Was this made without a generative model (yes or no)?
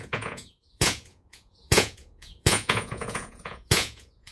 no